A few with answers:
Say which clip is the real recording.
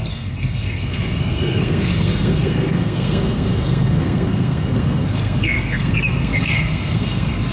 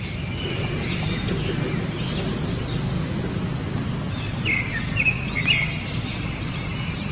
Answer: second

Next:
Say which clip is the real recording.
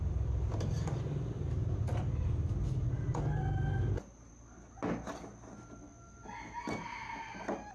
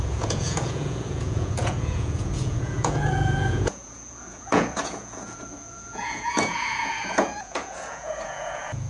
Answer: first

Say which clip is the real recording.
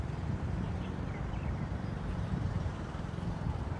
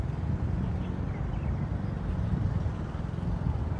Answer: second